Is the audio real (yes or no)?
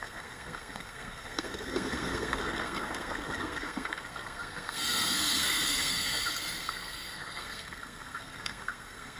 no